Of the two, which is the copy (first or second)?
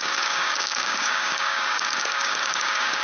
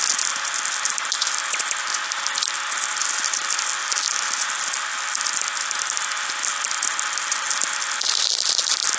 first